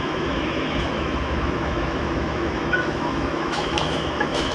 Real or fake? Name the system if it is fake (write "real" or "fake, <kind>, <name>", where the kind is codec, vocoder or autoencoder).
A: fake, autoencoder, DAC-VAE